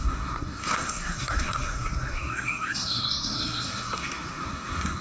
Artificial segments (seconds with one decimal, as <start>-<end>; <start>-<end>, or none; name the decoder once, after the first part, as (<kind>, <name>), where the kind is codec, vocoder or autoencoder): 0.0-5.0 (codec, SNAC)